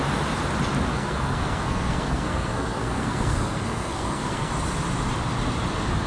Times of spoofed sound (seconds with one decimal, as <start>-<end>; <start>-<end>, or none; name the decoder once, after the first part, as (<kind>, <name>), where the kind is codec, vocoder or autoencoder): 0.9-4.5 (codec, SNAC)